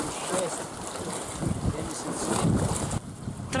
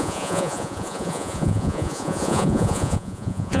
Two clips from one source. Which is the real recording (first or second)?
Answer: first